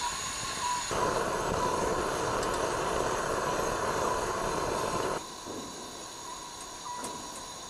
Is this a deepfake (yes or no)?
no